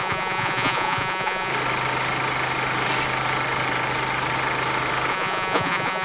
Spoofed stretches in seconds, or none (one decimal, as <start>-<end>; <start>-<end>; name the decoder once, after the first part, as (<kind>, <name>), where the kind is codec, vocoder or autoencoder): 0.0-1.5 (vocoder, Vocos); 5.1-6.0